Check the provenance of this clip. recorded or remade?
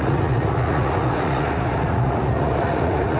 remade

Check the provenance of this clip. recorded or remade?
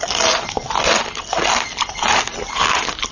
recorded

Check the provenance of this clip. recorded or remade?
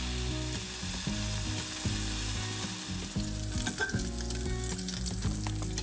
recorded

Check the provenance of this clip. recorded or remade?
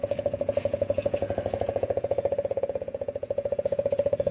remade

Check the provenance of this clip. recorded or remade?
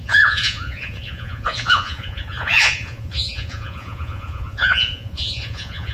remade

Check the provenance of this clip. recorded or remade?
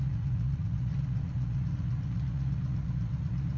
remade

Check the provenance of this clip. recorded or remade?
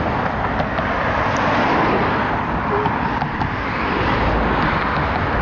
recorded